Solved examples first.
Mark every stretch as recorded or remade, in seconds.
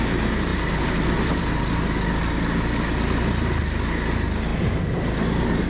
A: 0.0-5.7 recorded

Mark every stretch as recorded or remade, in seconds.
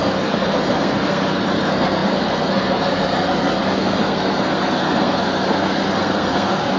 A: 0.0-6.8 remade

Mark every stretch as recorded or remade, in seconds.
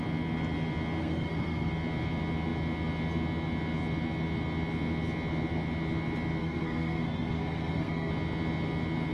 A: 0.0-1.0 recorded; 1.0-1.7 remade; 1.7-6.4 recorded; 6.4-8.1 remade; 8.1-9.1 recorded